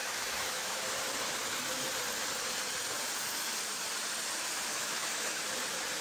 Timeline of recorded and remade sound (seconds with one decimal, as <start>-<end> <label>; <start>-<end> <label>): 0.0-0.8 remade; 0.8-4.7 recorded; 4.7-5.4 remade; 5.4-6.0 recorded